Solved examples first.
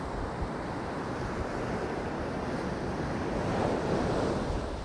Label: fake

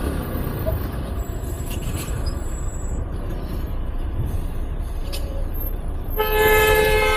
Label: fake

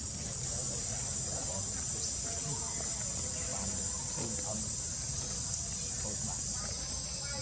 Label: real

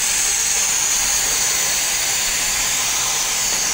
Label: real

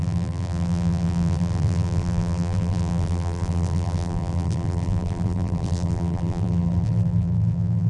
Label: fake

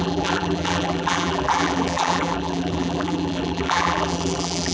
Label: fake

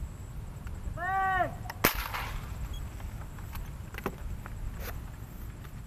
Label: real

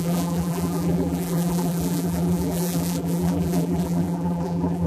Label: fake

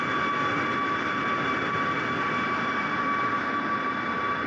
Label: real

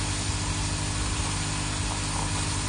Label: real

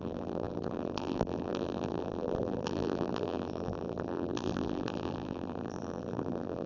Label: fake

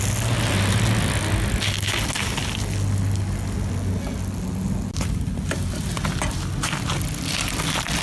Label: real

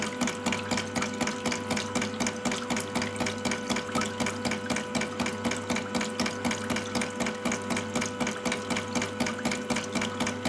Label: real